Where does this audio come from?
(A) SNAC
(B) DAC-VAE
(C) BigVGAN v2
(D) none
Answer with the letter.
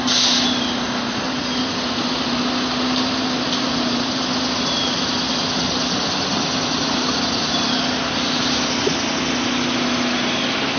D